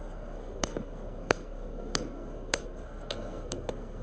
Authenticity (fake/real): fake